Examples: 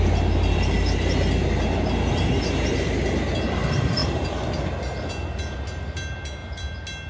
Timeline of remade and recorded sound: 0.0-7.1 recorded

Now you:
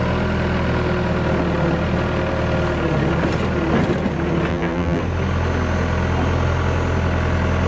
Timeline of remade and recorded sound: 0.0-4.5 recorded; 4.5-5.0 remade; 5.0-7.7 recorded

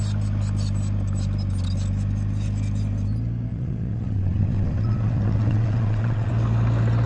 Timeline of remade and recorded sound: 0.0-3.5 recorded; 3.5-6.3 remade; 6.3-7.1 recorded